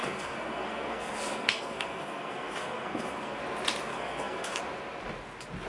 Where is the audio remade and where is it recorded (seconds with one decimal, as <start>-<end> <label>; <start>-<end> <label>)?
0.0-3.4 remade; 3.4-3.9 recorded; 3.9-4.6 remade; 4.6-5.7 recorded